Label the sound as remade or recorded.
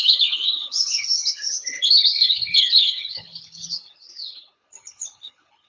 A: remade